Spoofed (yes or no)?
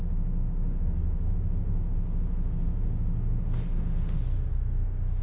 yes